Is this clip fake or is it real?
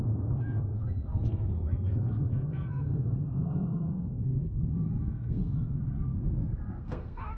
fake